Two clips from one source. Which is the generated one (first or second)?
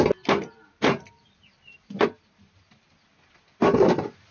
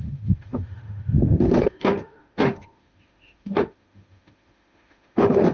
second